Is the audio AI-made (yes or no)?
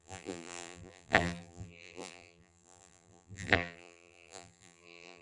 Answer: yes